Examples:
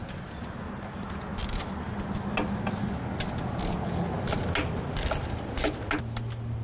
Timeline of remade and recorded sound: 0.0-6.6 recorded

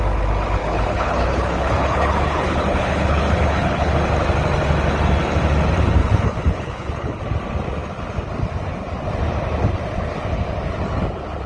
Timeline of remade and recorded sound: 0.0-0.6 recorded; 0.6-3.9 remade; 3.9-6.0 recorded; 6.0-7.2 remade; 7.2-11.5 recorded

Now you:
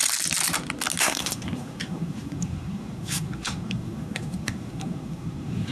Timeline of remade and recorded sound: 0.0-1.0 recorded; 1.0-5.7 remade

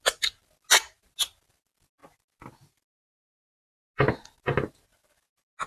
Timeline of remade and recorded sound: 0.0-5.7 recorded

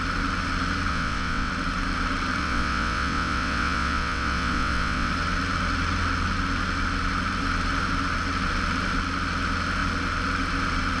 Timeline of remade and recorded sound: 0.0-0.9 recorded; 0.9-1.5 remade; 1.5-2.4 recorded; 2.4-5.1 remade; 5.1-11.0 recorded

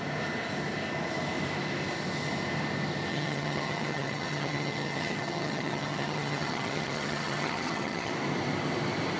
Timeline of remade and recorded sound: 0.0-3.1 recorded; 3.1-8.1 remade; 8.1-9.2 recorded

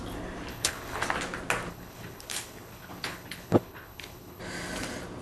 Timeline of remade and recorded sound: 0.0-0.5 recorded; 0.5-1.0 remade; 1.0-1.7 recorded; 1.7-4.4 remade; 4.4-5.2 recorded

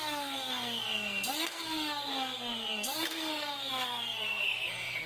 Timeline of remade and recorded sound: 0.0-5.1 remade